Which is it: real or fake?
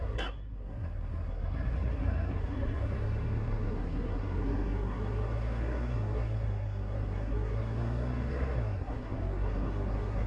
fake